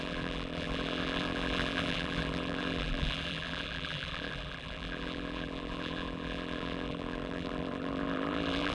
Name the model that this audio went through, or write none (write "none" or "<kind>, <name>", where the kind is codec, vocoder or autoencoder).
vocoder, BigVGAN v2